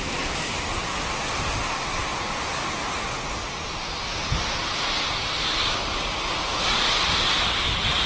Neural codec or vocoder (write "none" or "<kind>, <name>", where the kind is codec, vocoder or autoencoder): none